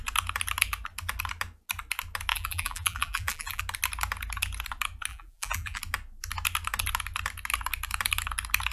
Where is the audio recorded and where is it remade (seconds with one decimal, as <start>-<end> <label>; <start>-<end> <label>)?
0.0-2.3 recorded; 2.3-3.6 remade; 3.6-5.1 recorded; 5.1-5.8 remade; 5.8-8.7 recorded